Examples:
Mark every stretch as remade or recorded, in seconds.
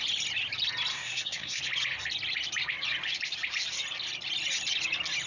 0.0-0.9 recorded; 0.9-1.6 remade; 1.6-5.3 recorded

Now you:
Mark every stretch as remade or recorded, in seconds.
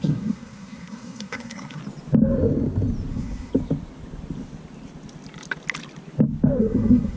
0.0-1.8 remade; 1.8-3.1 recorded; 3.1-3.5 remade; 3.5-6.6 recorded; 6.6-7.2 remade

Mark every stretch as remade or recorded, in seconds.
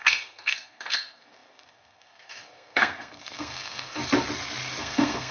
0.0-4.0 remade; 4.0-4.8 recorded; 4.8-5.3 remade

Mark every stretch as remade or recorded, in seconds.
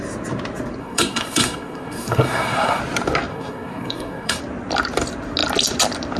0.0-0.8 recorded; 0.8-2.8 remade; 2.8-3.3 recorded; 3.3-4.4 remade; 4.4-6.2 recorded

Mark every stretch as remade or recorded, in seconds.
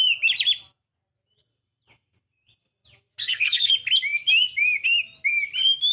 0.0-3.2 recorded; 3.2-3.7 remade; 3.7-5.9 recorded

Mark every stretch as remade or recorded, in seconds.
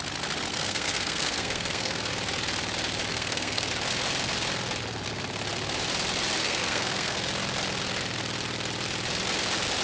0.0-0.5 recorded; 0.5-2.1 remade; 2.1-3.1 recorded; 3.1-3.7 remade; 3.7-6.4 recorded; 6.4-7.3 remade; 7.3-9.8 recorded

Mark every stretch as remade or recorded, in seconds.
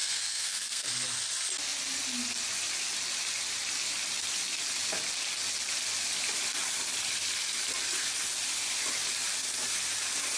0.0-0.9 remade; 0.9-10.4 recorded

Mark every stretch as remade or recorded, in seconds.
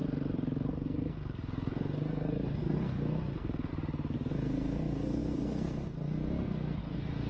0.0-0.7 recorded; 0.7-3.7 remade; 3.7-4.3 recorded; 4.3-7.3 remade